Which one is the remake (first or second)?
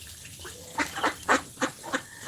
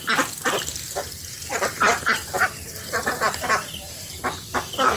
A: second